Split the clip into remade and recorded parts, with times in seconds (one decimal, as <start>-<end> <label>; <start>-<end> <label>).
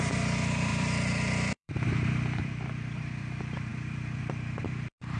0.0-5.2 remade